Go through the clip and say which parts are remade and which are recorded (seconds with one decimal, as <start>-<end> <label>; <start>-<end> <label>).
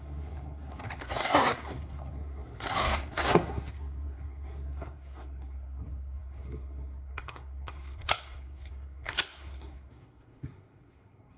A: 0.0-11.4 remade